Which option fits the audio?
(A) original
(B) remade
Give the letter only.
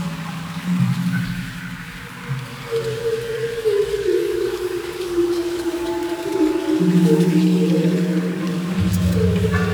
B